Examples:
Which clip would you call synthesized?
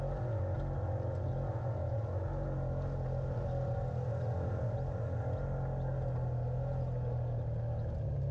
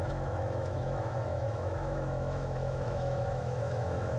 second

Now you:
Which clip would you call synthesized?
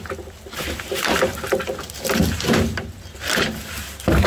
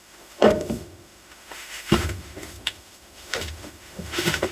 second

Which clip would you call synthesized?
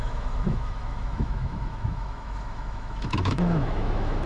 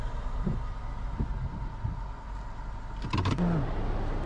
first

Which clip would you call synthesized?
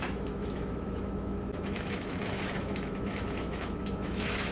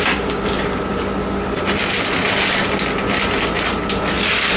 first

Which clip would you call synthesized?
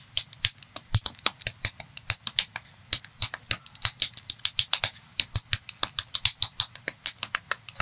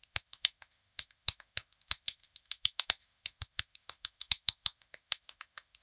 second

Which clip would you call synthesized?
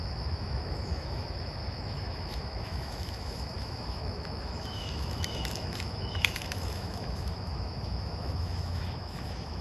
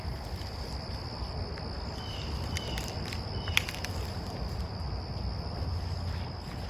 first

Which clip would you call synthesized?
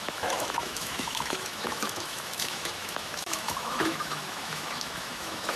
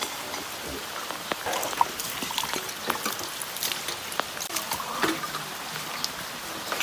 first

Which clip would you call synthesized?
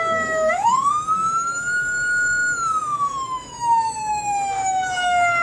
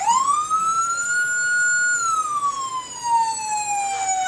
first